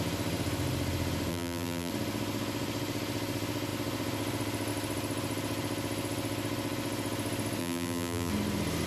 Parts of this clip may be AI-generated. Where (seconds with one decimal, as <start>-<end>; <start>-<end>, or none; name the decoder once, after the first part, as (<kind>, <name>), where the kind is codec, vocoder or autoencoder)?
1.3-1.9 (vocoder, BigVGAN v2); 7.6-8.3